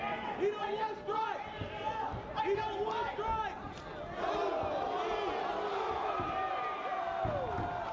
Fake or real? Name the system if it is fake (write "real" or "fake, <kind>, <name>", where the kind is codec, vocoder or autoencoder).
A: real